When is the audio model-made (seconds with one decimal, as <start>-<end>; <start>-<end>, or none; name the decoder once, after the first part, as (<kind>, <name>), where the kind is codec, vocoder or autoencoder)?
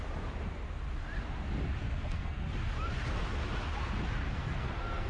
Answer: 1.8-2.4 (codec, SNAC); 4.2-5.1